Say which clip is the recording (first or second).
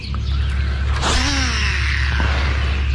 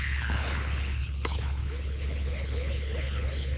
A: first